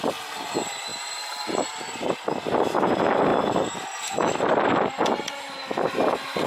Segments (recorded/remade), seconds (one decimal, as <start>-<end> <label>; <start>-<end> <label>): 0.0-0.9 recorded; 0.9-2.2 remade; 2.2-6.5 recorded